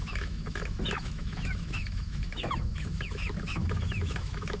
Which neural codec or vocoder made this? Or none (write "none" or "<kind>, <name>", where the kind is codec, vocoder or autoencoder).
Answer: autoencoder, DAC-VAE